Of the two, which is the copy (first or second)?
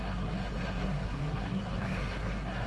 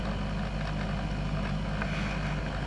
first